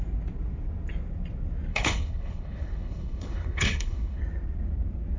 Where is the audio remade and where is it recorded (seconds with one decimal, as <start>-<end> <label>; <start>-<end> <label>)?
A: 0.0-1.7 recorded; 1.7-4.2 remade; 4.2-5.2 recorded